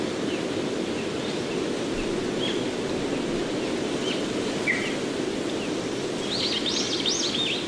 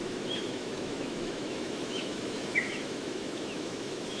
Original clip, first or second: first